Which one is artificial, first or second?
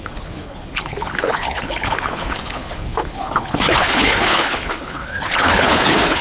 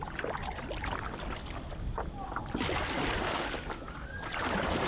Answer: first